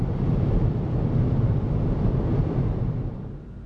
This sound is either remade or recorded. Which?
remade